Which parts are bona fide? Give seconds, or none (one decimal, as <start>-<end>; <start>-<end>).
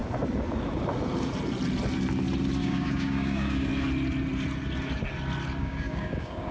0.0-2.6; 3.7-5.6